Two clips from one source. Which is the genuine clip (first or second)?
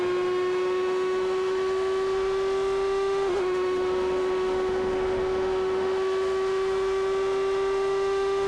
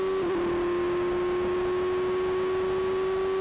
second